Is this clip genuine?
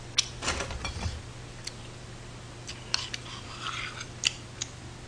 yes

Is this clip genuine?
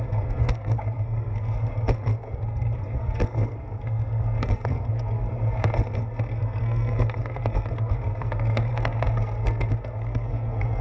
no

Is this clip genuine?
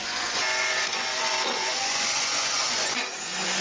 no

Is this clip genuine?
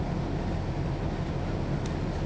yes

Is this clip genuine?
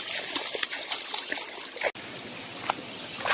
yes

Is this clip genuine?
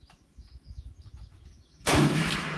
no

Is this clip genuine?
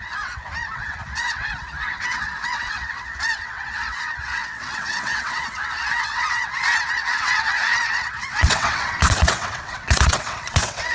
no